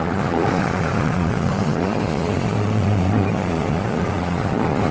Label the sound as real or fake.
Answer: fake